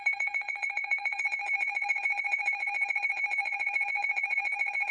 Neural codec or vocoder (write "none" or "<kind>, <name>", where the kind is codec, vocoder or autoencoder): vocoder, Vocos